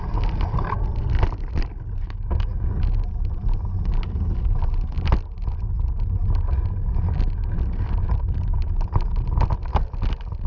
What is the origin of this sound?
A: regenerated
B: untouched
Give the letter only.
B